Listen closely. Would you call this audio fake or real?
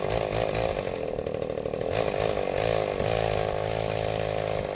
real